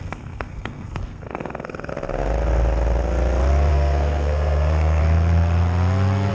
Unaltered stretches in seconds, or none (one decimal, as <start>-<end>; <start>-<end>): 1.9-3.7; 5.0-6.3